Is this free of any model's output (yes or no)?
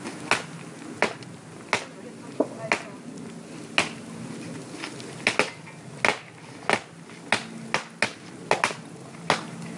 yes